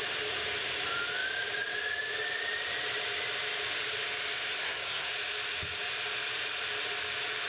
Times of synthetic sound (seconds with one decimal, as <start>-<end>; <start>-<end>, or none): 4.6-5.1